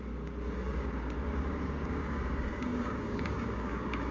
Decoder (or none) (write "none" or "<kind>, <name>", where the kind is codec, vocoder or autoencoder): codec, DAC